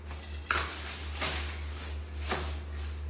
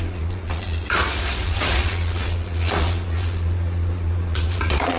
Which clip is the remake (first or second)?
second